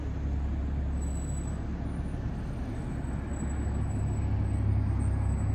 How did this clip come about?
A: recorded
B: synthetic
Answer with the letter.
A